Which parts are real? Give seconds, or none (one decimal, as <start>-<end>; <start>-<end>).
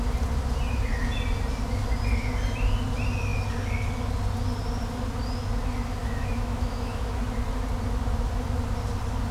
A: 0.0-6.0; 7.2-9.3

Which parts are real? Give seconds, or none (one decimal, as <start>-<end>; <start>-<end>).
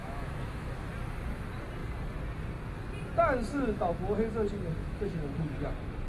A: 0.9-4.8; 5.3-6.1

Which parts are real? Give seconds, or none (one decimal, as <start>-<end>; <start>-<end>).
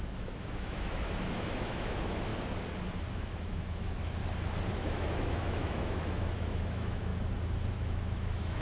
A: 2.3-3.1; 4.2-4.7; 7.1-7.7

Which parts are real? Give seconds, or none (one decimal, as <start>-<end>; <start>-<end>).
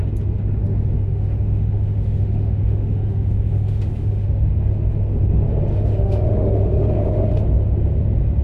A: 0.0-0.6; 4.5-5.7; 7.4-8.4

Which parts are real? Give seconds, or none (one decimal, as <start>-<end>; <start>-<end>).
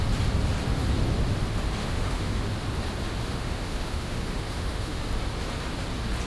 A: 0.0-1.8; 2.4-3.2; 5.0-6.3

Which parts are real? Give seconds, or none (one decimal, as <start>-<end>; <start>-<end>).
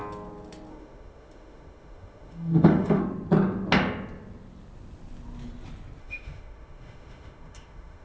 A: 0.0-0.7; 3.0-6.0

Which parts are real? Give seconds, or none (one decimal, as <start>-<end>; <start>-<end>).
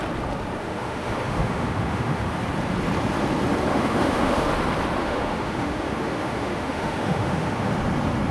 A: 0.0-0.6; 2.3-3.7; 4.5-5.0; 7.7-8.3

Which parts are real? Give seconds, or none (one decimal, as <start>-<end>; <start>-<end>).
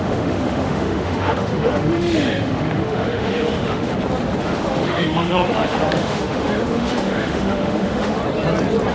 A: 3.9-4.4; 8.2-8.9